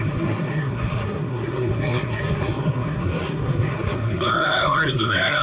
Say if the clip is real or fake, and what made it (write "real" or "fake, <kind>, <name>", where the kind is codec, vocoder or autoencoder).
fake, codec, SNAC